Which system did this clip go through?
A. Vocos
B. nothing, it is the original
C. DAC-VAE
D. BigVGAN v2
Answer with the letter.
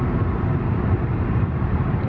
D